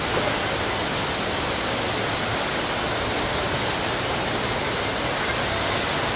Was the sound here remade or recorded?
recorded